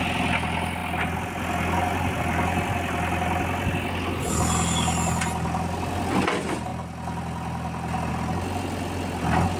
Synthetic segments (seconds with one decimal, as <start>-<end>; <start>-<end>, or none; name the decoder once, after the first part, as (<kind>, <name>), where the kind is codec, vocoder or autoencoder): none